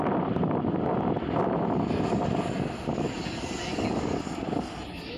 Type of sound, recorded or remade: recorded